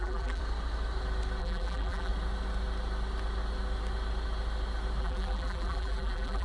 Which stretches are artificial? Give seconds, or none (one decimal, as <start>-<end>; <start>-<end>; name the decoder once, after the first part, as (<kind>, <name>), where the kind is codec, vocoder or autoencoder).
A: 0.0-0.4 (vocoder, BigVGAN v2); 1.4-2.1; 5.0-6.4